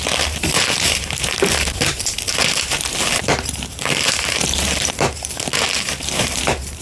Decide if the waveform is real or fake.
fake